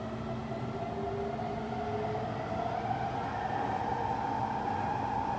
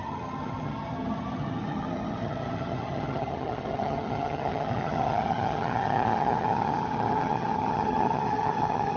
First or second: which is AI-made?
second